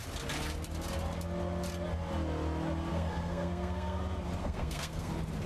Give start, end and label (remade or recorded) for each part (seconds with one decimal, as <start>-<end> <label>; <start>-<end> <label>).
0.0-2.9 recorded; 2.9-4.0 remade; 4.0-4.4 recorded; 4.4-5.1 remade; 5.1-5.5 recorded